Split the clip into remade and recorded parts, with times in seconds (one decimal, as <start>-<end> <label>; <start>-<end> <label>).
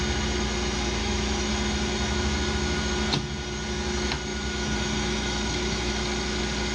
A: 0.0-1.0 recorded; 1.0-1.5 remade; 1.5-4.3 recorded; 4.3-5.9 remade; 5.9-6.7 recorded